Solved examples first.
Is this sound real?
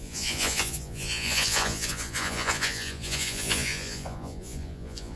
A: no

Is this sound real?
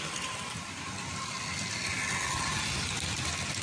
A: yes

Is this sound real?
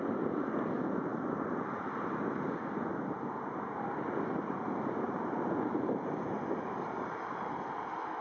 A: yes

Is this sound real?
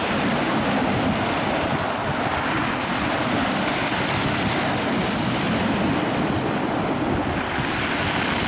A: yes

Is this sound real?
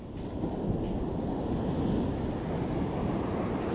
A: yes